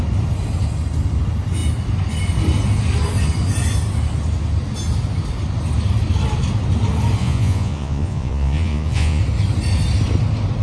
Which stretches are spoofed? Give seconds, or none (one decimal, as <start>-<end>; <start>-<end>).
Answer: 7.2-9.2